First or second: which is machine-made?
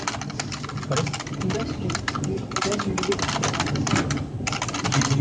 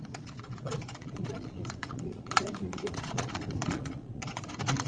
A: second